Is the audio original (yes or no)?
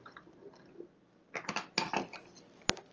yes